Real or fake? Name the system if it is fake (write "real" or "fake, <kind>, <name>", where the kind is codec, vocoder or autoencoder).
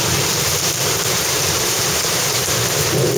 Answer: real